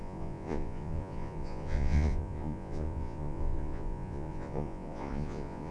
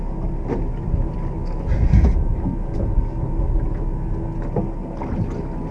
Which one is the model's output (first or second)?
first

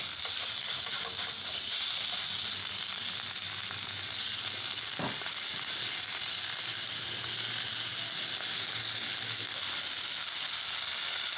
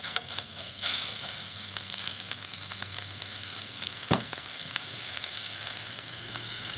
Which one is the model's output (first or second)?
second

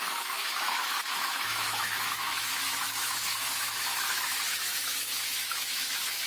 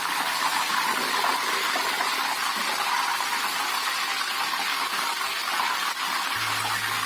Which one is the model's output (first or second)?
first